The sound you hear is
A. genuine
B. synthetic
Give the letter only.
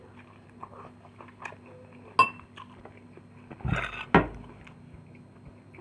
A